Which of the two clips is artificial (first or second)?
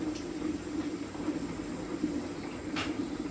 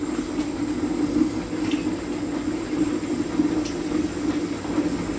first